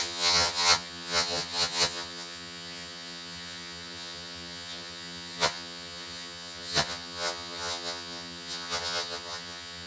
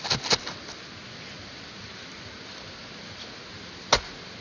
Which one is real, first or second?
second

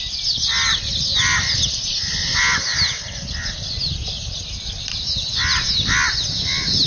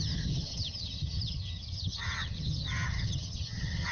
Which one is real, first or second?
first